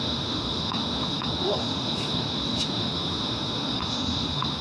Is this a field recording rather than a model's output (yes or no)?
no